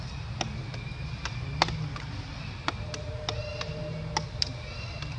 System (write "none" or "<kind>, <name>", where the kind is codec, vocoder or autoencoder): none